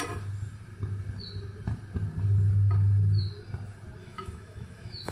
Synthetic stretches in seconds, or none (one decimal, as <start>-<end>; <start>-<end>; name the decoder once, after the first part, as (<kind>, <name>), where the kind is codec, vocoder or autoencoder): 4.0-5.1 (autoencoder, DAC-VAE)